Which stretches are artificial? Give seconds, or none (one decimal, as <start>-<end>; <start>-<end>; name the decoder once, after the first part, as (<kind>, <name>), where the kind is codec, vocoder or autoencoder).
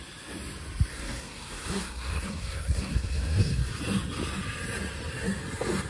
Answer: 0.9-3.8 (codec, SNAC)